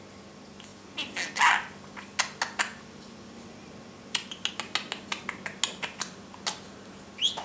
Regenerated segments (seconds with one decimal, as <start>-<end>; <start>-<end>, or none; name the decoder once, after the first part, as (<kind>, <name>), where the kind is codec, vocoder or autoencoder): none